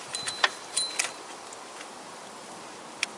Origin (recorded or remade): remade